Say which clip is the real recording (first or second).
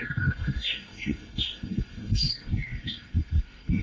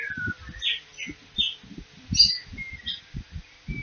second